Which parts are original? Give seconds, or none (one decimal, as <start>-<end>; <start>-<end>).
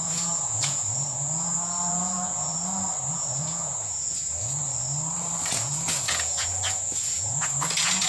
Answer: 2.5-3.1; 4.6-5.5